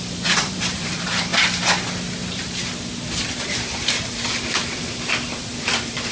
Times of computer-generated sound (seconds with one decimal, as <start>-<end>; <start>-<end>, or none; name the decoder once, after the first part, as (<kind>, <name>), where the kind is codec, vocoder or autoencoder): 0.0-1.3 (vocoder, BigVGAN v2); 3.4-6.1